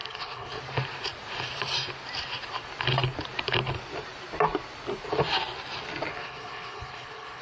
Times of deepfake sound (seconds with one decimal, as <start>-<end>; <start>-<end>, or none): 0.0-0.6; 6.1-7.4